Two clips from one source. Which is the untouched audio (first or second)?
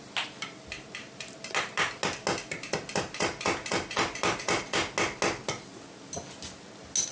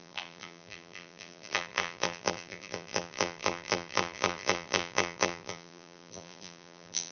first